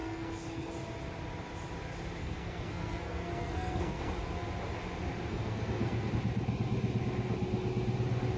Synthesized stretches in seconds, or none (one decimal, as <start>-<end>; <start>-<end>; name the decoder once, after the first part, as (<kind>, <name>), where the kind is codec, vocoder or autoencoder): 0.0-0.7 (codec, SNAC); 2.2-4.1; 5.3-6.1